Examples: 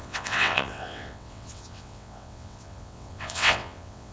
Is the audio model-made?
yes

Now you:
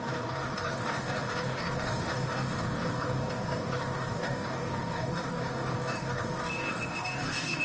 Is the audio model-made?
yes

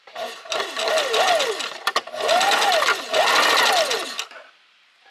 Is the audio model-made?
no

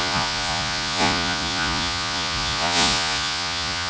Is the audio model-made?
yes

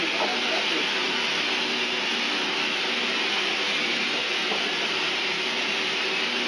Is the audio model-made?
no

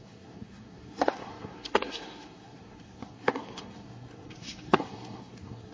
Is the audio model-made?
yes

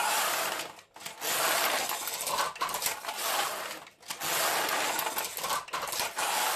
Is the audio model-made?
no